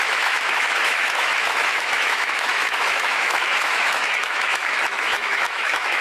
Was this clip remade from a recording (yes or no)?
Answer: yes